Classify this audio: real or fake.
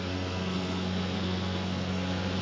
fake